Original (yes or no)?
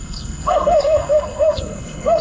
no